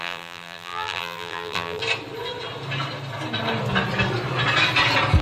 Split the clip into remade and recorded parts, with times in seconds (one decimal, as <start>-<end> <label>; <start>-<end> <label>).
0.0-1.8 remade; 1.8-5.2 recorded